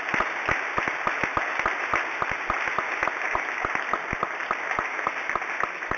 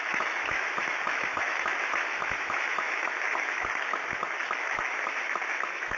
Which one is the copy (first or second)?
second